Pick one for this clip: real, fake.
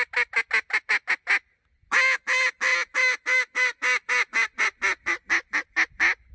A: real